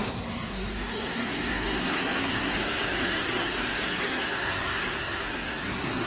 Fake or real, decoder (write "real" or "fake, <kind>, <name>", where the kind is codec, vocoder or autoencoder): fake, codec, SNAC